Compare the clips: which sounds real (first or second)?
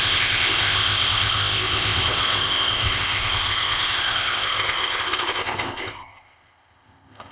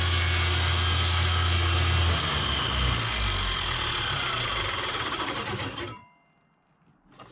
second